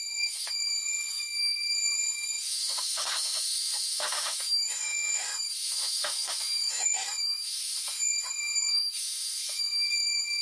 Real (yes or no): no